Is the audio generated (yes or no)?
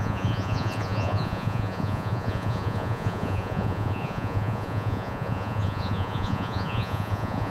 yes